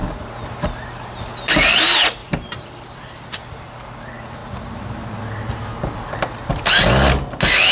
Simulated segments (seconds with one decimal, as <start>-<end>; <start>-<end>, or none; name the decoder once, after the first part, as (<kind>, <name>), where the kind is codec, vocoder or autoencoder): 2.2-3.7 (vocoder, BigVGAN v2)